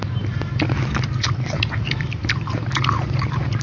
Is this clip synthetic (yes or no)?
no